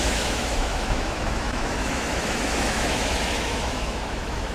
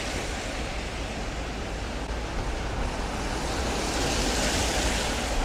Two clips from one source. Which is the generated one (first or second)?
first